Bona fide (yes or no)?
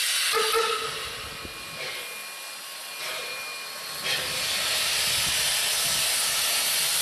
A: yes